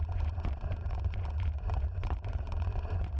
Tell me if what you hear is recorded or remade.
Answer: remade